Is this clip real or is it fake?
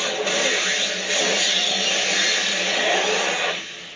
real